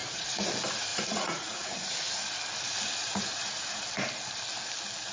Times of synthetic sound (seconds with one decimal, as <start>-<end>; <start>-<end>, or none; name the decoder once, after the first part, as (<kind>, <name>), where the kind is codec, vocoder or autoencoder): 0.0-0.5 (vocoder, Vocos); 0.9-2.1; 3.0-3.8